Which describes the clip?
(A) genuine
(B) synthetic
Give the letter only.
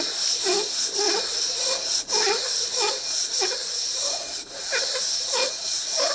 A